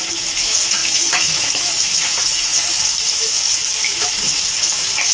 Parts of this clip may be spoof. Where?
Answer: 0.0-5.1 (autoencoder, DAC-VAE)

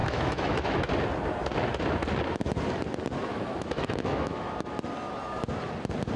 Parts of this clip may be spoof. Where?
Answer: 0.0-0.9 (autoencoder, DAC-VAE); 3.3-4.5

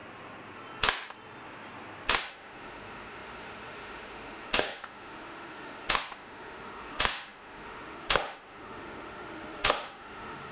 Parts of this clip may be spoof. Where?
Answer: 2.2-10.5 (autoencoder, DAC-VAE)

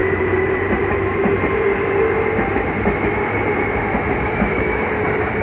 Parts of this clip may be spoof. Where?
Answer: 3.8-5.0 (autoencoder, DAC-VAE)